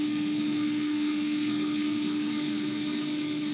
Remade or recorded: remade